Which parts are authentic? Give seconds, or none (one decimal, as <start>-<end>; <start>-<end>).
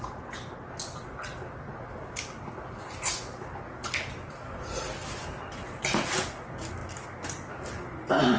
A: 0.0-8.4